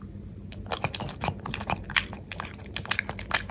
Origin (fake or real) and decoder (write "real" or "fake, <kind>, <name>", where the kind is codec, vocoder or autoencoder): real